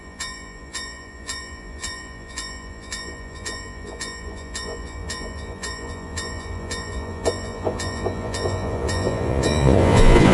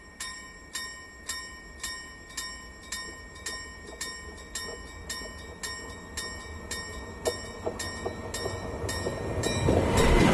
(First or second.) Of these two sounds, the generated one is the first